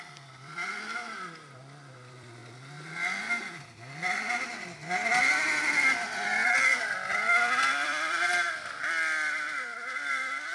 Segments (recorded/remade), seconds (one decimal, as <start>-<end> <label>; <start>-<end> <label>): 0.0-2.4 remade; 2.4-3.6 recorded; 3.6-10.5 remade